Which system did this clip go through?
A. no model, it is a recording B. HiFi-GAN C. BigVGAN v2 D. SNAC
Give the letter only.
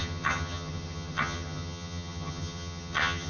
B